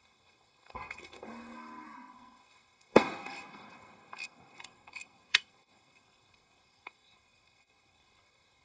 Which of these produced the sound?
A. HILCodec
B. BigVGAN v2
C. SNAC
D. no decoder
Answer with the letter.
C